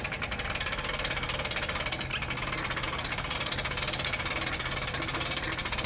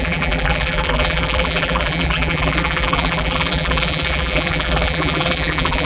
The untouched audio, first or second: first